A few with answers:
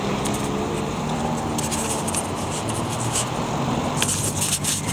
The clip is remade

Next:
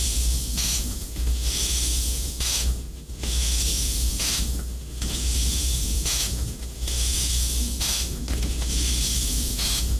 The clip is remade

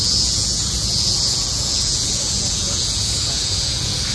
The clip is remade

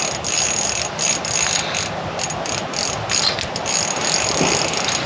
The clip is recorded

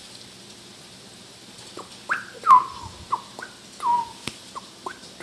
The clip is recorded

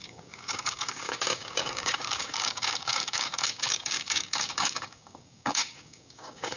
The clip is remade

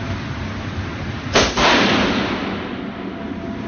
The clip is recorded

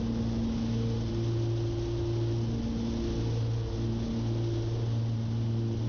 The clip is recorded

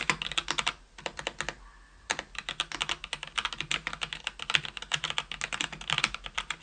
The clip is recorded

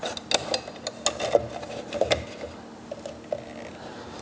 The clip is recorded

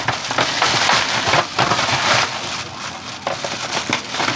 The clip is recorded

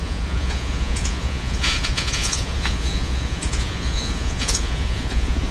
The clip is remade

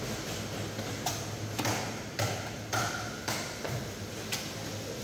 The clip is recorded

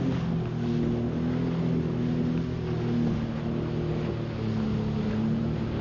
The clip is recorded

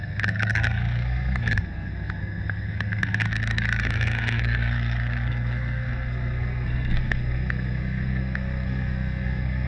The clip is remade